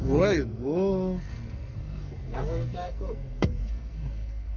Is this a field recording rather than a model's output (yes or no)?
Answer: no